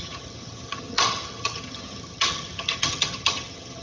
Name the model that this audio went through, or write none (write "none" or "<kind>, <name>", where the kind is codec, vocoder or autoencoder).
vocoder, HiFi-GAN